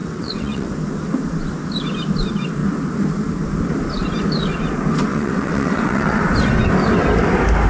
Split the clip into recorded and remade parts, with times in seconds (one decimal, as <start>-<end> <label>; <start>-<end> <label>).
0.0-0.7 remade; 0.7-5.1 recorded; 5.1-6.2 remade; 6.2-7.7 recorded